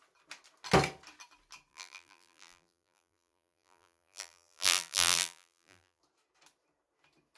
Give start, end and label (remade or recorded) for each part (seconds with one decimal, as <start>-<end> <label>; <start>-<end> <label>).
0.0-1.7 recorded; 1.7-6.0 remade; 6.0-7.4 recorded